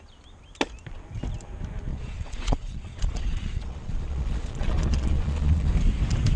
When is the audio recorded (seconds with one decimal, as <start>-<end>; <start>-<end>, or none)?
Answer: 0.0-1.9; 5.7-6.4